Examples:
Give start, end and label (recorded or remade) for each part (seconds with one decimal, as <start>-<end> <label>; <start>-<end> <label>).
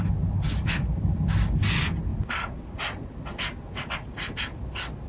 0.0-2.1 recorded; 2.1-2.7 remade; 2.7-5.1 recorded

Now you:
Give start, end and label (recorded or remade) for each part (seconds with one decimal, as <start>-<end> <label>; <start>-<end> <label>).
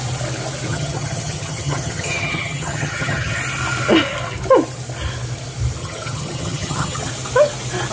0.0-0.7 recorded; 0.7-3.4 remade; 3.4-5.8 recorded; 5.8-7.1 remade; 7.1-7.9 recorded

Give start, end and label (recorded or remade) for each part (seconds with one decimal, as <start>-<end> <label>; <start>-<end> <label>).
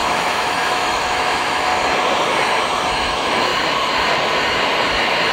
0.0-1.7 remade; 1.7-2.9 recorded; 2.9-3.5 remade; 3.5-5.3 recorded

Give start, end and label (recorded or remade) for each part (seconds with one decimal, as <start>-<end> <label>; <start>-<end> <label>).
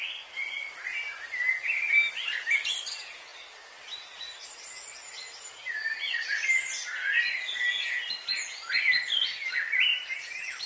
0.0-10.7 recorded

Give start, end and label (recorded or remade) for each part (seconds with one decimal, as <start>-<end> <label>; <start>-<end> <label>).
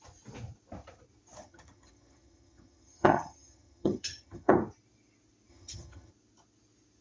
0.0-1.4 recorded; 1.4-4.5 remade; 4.5-5.5 recorded; 5.5-6.1 remade; 6.1-7.0 recorded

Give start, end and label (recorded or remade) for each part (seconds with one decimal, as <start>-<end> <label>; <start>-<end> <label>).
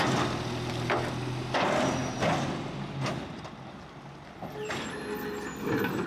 0.0-6.1 recorded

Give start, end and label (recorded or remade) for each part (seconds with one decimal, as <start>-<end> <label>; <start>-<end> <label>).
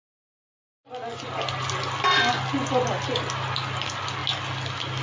0.0-5.0 recorded